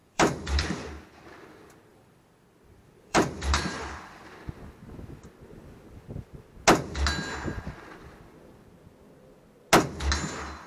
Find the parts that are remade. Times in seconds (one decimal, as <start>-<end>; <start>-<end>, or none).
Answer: 0.0-0.9; 1.9-4.3